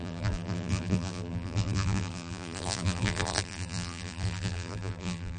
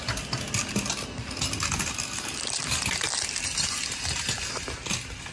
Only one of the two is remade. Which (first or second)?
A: first